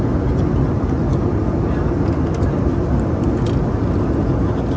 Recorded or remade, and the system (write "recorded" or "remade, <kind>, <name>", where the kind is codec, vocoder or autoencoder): recorded